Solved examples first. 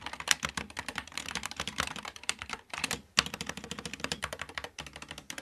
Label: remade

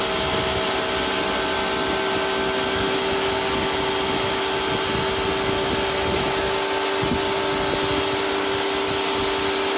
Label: recorded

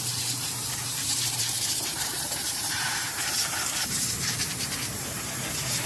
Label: remade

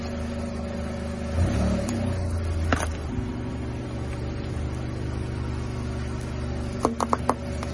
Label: recorded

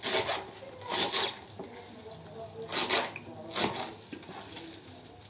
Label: recorded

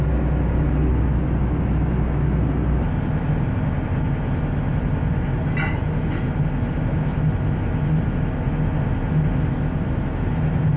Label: recorded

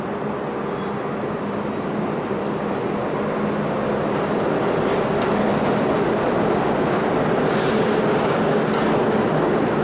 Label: recorded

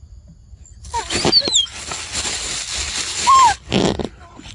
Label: recorded